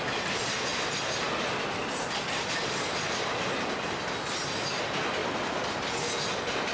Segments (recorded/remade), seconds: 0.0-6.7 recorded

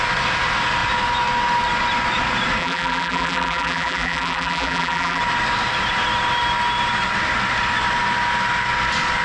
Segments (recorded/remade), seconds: 0.0-2.6 recorded; 2.6-5.2 remade; 5.2-9.2 recorded

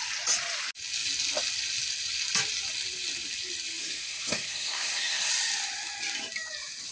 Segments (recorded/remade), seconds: 0.0-3.8 recorded; 3.8-5.3 remade; 5.3-6.9 recorded

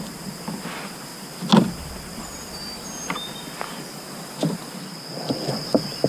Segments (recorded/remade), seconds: 0.0-6.1 recorded

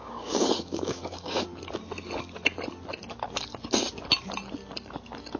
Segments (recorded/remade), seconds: 0.0-1.4 remade; 1.4-5.4 recorded

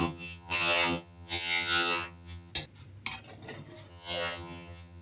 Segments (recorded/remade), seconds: 0.0-2.5 remade; 2.5-3.9 recorded; 3.9-5.0 remade

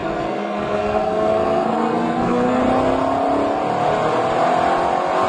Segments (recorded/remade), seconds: 0.0-2.6 remade; 2.6-5.3 recorded

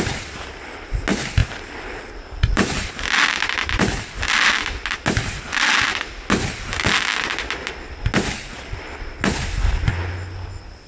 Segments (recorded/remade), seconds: 0.0-1.4 recorded; 1.4-4.5 remade; 4.5-10.9 recorded